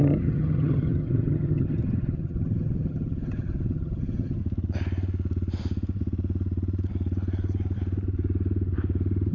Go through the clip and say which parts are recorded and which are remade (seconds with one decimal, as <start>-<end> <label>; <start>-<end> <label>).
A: 0.0-4.4 remade; 4.4-9.3 recorded